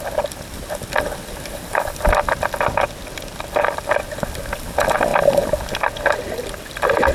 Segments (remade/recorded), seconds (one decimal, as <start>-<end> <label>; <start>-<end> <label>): 0.0-7.1 recorded